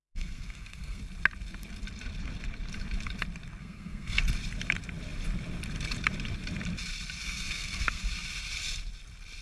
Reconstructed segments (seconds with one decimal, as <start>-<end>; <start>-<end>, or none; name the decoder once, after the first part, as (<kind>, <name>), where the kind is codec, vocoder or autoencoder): 0.0-1.0 (codec, SNAC); 3.6-4.2; 7.2-8.0